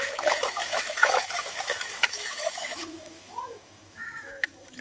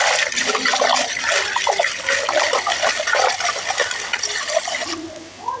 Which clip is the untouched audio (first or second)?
second